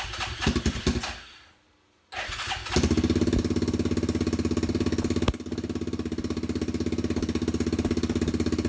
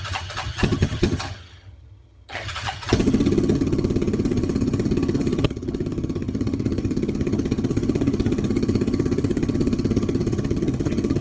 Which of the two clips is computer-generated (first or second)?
second